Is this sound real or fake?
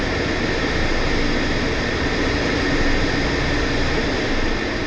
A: real